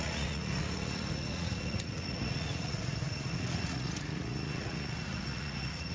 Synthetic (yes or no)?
yes